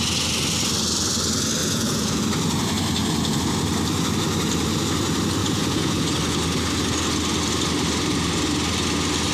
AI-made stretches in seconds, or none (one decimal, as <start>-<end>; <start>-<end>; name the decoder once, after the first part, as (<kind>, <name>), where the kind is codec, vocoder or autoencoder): 1.6-2.2 (vocoder, Vocos); 5.4-6.0